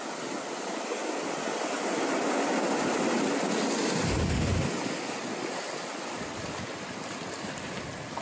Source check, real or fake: real